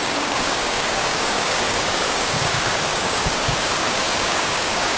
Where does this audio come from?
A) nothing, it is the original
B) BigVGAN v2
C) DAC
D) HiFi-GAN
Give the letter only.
C